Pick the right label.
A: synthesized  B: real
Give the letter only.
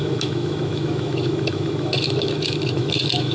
A